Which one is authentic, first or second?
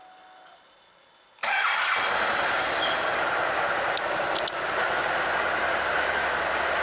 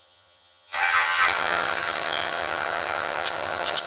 first